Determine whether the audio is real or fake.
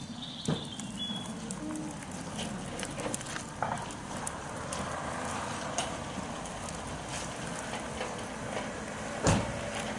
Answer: real